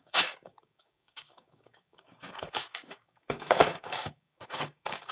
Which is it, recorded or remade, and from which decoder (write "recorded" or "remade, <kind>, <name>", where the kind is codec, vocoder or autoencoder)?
remade, codec, DAC